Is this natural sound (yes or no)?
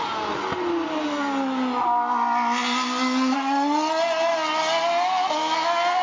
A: yes